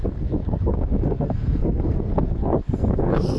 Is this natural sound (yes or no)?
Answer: no